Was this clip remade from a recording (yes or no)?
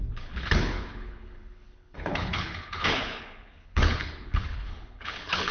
yes